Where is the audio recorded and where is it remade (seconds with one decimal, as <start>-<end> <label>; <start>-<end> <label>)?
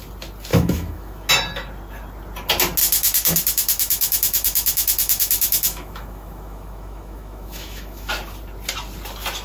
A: 0.0-0.5 recorded; 0.5-1.3 remade; 1.3-2.8 recorded; 2.8-8.1 remade; 8.1-9.4 recorded